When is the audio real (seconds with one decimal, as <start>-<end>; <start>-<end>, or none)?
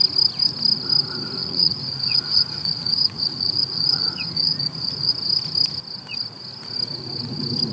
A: 0.0-1.4; 5.1-7.7